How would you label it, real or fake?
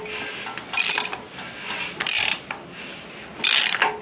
real